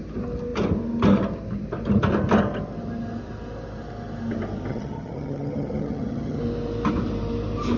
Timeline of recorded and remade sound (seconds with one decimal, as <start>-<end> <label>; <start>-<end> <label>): 0.0-4.7 recorded; 4.7-6.4 remade; 6.4-7.8 recorded